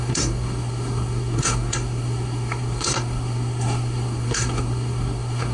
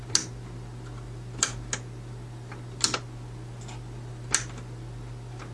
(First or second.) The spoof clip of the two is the first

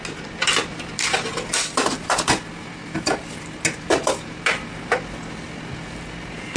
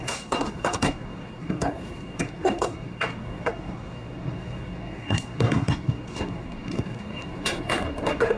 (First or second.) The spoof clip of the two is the second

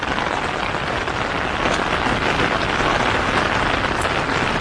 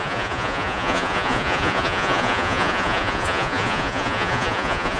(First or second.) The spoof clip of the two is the second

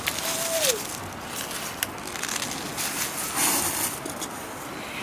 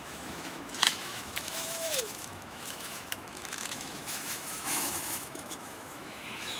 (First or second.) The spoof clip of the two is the second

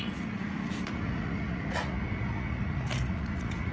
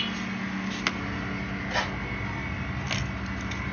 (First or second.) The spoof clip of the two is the first